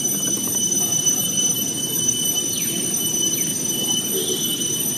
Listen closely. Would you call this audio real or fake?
fake